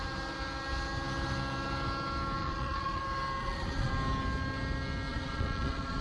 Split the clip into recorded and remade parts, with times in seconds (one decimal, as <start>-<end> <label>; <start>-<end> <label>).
0.0-2.4 recorded; 2.4-3.0 remade; 3.0-3.4 recorded; 3.4-3.9 remade; 3.9-5.1 recorded; 5.1-6.0 remade